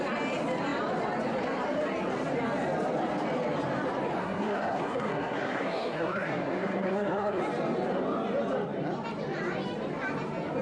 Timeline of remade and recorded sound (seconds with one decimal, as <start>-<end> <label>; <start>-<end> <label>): 0.0-4.2 recorded; 4.2-7.4 remade; 7.4-10.6 recorded